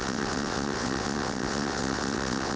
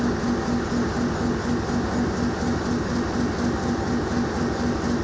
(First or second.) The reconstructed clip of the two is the first